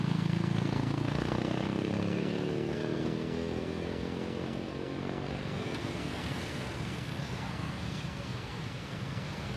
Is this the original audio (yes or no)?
no